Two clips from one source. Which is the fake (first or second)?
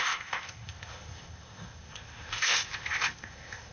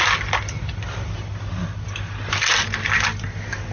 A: first